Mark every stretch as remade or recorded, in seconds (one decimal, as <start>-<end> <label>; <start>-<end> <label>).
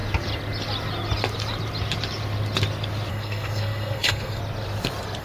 0.0-3.1 recorded; 3.1-4.4 remade; 4.4-5.2 recorded